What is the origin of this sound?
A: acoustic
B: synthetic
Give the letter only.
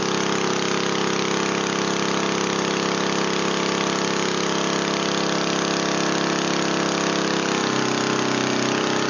A